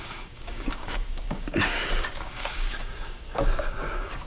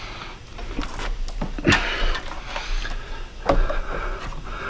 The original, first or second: second